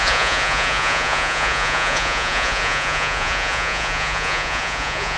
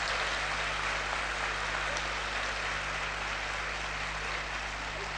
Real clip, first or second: second